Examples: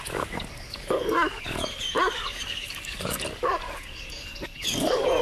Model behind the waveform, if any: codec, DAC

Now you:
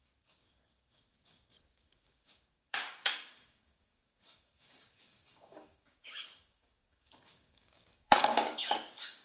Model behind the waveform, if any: codec, DAC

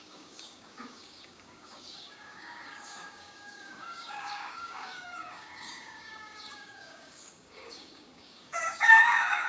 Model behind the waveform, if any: codec, DAC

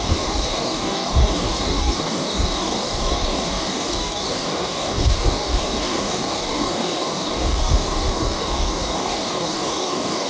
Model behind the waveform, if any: codec, DAC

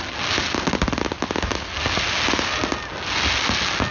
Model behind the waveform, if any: none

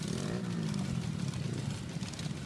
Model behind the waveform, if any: none